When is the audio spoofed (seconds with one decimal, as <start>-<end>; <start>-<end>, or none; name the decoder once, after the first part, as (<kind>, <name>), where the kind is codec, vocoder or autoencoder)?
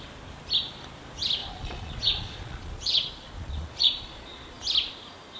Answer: 1.4-4.6 (vocoder, Vocos)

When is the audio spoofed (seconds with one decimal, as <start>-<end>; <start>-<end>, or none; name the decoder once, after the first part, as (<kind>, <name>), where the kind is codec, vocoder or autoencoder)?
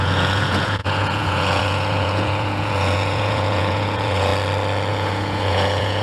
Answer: 0.0-4.3 (vocoder, Vocos); 4.9-6.0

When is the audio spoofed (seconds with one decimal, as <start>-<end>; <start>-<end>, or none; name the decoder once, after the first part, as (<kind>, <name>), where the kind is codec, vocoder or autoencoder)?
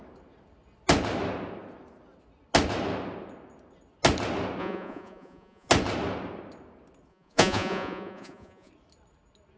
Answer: 4.6-5.7 (vocoder, Vocos); 7.1-8.7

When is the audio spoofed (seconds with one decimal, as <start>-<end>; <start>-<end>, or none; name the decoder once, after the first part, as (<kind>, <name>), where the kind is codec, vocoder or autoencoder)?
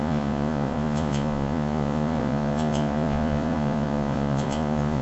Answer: 0.0-5.0 (vocoder, Vocos)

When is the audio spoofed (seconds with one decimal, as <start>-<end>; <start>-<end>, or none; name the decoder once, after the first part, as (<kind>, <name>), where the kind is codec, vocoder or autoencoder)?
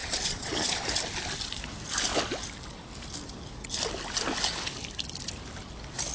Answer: 0.0-0.8 (vocoder, Vocos)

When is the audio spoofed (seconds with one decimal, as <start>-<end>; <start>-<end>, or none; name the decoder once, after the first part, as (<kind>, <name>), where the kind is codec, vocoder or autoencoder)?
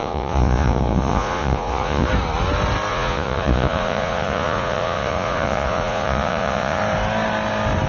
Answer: 0.0-2.1 (vocoder, Vocos); 2.9-6.8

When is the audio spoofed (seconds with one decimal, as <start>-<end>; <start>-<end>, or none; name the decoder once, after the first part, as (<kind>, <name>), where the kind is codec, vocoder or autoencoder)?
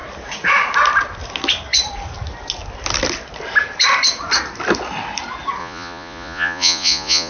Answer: 5.6-7.3 (vocoder, Vocos)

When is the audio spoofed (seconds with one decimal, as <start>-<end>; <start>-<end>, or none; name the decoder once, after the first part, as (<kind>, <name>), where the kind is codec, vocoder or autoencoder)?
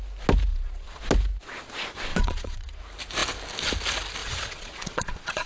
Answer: 0.5-1.0 (vocoder, Vocos); 2.1-2.8; 4.2-5.5